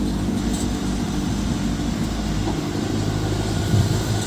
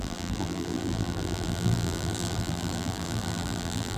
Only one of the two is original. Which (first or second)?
first